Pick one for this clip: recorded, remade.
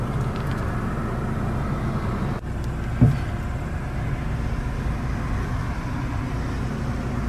recorded